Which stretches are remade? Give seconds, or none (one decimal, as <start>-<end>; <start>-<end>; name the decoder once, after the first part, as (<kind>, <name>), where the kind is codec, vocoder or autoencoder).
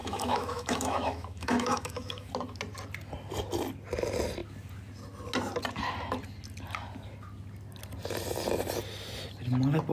0.0-2.3 (autoencoder, DAC-VAE)